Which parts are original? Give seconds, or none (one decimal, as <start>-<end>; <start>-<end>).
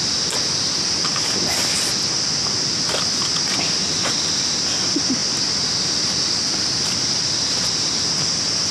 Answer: 0.0-8.7